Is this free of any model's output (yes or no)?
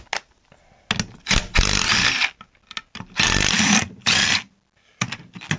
yes